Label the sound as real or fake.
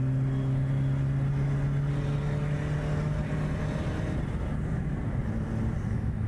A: real